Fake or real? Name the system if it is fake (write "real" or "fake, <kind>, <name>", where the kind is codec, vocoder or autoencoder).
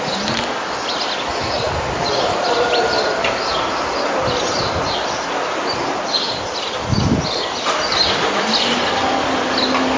real